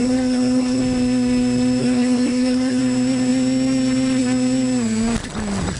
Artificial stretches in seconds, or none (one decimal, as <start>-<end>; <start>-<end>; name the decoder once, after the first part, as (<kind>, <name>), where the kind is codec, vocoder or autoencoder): 0.0-0.8 (codec, SNAC); 1.8-2.8

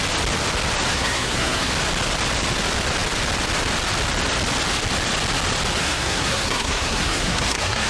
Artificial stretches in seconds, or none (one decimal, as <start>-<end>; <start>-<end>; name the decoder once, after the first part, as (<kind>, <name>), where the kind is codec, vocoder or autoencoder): 0.9-1.7 (codec, SNAC); 5.8-7.9

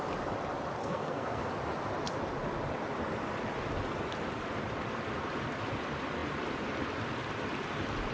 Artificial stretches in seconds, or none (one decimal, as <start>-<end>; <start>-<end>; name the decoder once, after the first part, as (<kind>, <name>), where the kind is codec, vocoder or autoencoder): 0.8-1.5 (codec, SNAC)

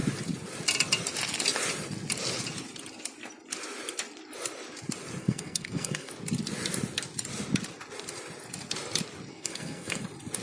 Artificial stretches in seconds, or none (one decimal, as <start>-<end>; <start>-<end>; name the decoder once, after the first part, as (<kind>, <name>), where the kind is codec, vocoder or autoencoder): 5.2-6.1 (codec, SNAC); 9.3-10.0